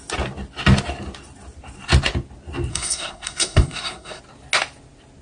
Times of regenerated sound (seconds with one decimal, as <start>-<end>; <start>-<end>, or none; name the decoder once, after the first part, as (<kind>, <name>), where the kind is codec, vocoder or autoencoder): 2.7-4.2 (codec, SNAC)